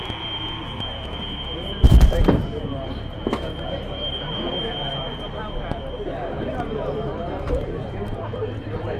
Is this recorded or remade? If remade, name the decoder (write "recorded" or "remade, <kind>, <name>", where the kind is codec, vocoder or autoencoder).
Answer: recorded